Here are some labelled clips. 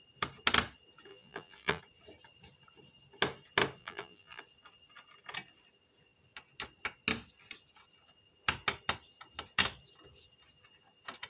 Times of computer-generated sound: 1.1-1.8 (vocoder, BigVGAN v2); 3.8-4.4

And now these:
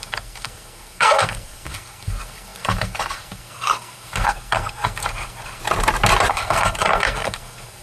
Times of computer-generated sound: 0.0-5.6 (codec, SNAC); 6.3-7.8

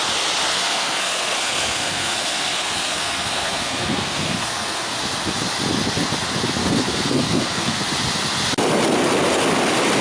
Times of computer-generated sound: 0.5-4.9 (codec, SNAC); 6.6-7.8

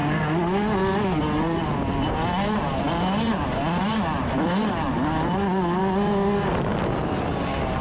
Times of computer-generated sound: none

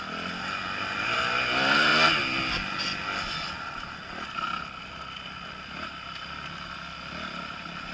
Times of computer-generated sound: none

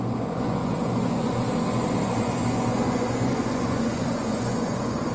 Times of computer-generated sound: 0.0-5.1 (vocoder, Vocos)